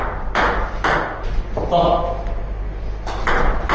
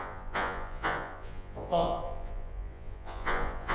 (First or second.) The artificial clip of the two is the second